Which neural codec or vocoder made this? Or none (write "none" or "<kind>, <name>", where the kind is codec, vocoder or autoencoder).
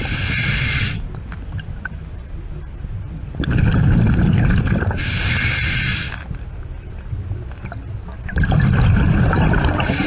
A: none